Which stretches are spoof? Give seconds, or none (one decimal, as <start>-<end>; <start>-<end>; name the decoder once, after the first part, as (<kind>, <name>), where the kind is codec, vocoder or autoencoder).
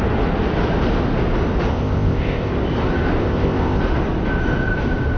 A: 1.7-2.5 (codec, ZipCodec); 3.2-3.8